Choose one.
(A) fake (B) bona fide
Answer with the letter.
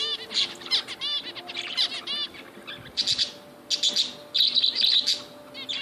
B